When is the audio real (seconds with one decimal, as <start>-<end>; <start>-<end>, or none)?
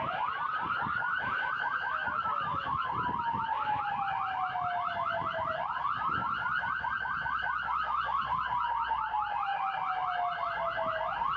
0.0-11.4